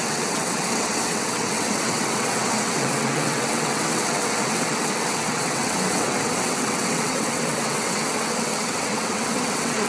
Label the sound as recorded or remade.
remade